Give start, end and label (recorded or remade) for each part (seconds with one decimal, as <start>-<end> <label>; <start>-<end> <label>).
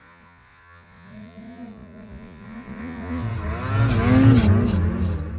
0.0-3.3 remade; 3.3-5.4 recorded